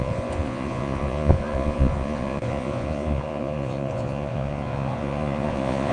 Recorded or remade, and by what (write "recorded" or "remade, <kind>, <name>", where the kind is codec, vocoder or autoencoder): remade, vocoder, Vocos